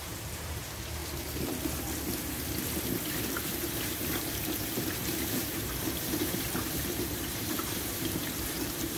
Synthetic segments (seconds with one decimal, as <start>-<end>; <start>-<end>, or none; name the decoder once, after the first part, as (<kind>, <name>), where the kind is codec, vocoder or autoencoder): 0.0-1.0 (vocoder, BigVGAN v2); 3.2-9.0